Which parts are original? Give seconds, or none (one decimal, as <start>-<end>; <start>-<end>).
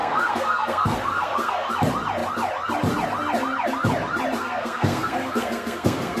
1.7-4.4